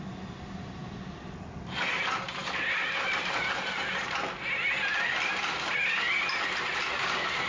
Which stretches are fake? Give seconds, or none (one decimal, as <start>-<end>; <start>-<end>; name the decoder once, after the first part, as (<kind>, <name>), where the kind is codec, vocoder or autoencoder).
none